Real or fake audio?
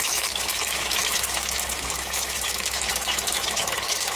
fake